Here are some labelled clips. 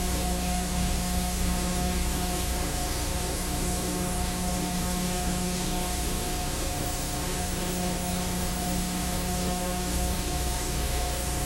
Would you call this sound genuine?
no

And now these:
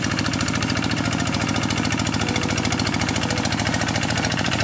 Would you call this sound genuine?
no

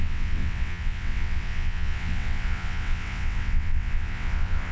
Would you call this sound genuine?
no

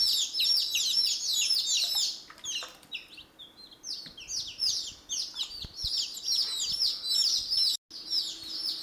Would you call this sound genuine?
yes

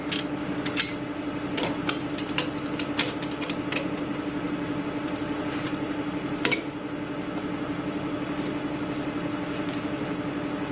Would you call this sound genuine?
yes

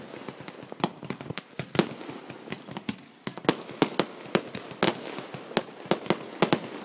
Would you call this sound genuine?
yes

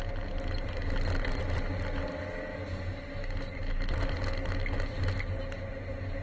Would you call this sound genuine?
yes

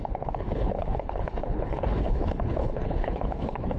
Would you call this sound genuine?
no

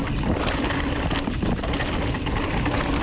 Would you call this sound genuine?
no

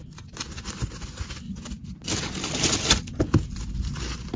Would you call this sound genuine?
yes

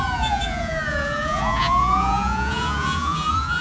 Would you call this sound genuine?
no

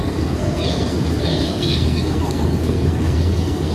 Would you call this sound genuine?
no